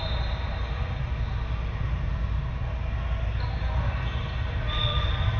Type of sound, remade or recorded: recorded